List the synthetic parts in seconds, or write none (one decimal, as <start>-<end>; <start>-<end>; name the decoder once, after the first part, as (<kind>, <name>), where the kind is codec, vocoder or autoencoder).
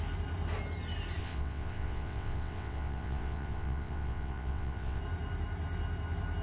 1.2-5.0 (vocoder, WaveNeXt)